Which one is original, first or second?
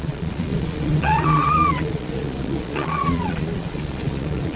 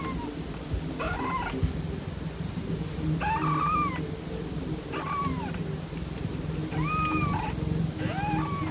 second